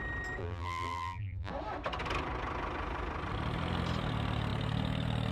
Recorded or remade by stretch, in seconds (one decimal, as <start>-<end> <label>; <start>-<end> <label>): 0.0-0.4 recorded; 0.4-1.5 remade; 1.5-5.3 recorded